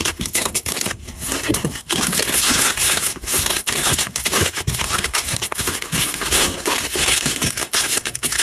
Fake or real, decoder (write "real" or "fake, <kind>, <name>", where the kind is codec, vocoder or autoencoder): fake, codec, SNAC